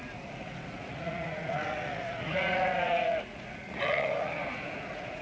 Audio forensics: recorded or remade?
remade